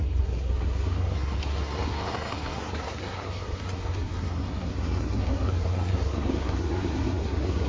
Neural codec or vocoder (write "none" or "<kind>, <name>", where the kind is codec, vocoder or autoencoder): codec, SNAC